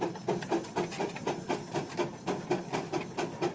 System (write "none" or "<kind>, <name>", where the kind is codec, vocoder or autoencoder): none